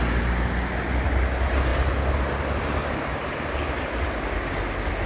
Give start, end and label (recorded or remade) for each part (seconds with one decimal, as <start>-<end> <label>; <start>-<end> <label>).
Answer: 0.0-5.1 recorded